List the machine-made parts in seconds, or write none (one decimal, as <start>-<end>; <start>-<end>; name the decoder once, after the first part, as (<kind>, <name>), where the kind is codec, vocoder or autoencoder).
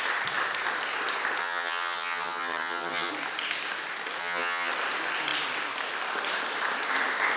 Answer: 1.4-3.1 (vocoder, HiFi-GAN); 4.2-4.7